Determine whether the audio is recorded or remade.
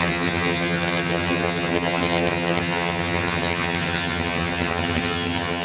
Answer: remade